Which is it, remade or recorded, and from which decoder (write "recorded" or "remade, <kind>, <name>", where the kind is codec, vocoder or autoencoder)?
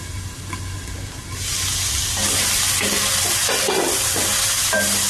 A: recorded